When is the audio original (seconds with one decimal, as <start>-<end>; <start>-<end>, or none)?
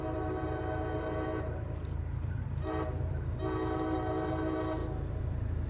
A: 4.8-5.7